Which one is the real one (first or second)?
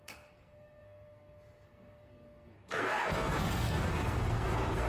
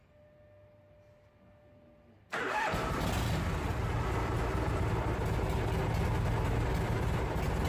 second